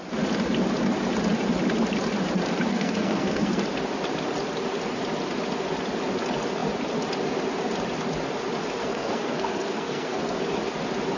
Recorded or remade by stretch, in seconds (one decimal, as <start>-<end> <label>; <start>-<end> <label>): 0.0-2.7 recorded; 2.7-3.6 remade; 3.6-8.8 recorded; 8.8-10.4 remade; 10.4-11.2 recorded